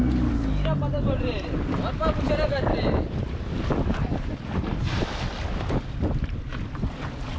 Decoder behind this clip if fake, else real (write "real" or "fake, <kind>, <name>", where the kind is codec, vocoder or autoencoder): real